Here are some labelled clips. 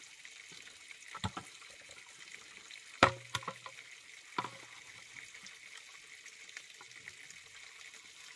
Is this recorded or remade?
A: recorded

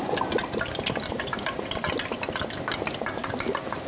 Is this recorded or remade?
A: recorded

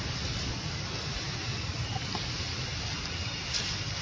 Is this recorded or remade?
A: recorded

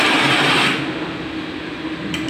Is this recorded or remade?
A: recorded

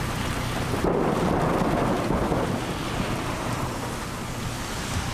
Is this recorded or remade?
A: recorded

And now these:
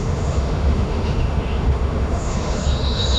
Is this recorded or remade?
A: remade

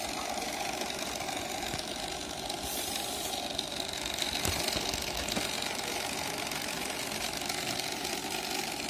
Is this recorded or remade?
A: recorded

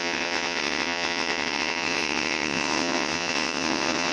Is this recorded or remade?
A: remade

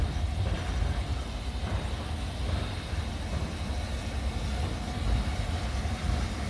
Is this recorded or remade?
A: recorded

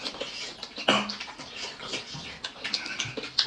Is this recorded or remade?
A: recorded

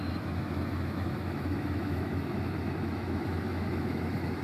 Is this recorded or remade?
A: remade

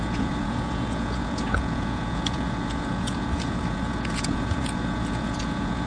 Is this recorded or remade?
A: remade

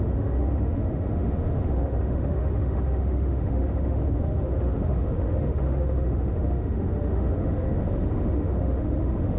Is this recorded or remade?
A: remade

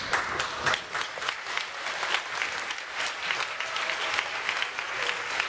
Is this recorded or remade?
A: recorded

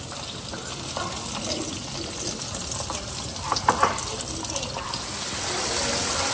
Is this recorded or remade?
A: recorded